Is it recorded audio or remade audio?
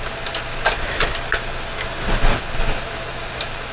recorded